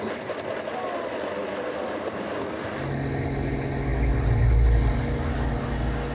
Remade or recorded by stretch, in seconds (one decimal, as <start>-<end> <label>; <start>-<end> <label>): 0.0-6.1 recorded